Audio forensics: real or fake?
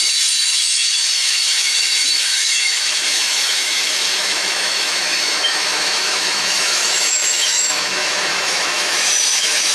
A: fake